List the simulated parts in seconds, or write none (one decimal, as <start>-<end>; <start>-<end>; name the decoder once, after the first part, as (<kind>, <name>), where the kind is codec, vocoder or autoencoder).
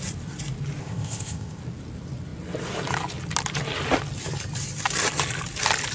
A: 0.8-1.6 (codec, ZipCodec)